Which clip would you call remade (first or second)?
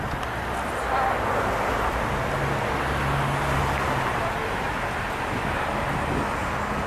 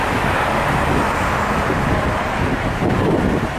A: second